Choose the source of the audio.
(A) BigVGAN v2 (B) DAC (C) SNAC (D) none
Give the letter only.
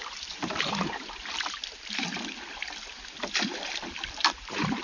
D